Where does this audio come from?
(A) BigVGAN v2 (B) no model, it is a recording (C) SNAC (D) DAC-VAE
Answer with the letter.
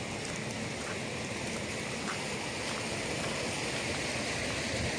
B